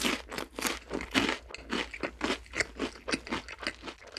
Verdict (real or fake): real